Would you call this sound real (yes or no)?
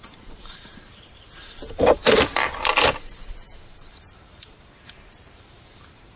no